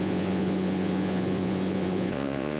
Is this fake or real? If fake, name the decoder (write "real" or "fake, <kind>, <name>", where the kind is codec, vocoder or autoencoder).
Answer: fake, vocoder, Vocos